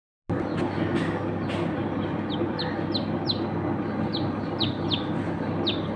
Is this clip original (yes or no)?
yes